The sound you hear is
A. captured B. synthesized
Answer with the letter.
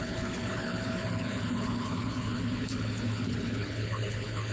B